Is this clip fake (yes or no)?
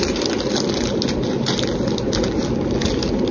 no